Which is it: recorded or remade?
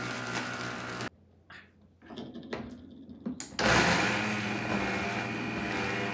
recorded